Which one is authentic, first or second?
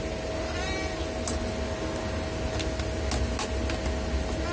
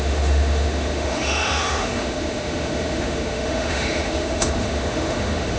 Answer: first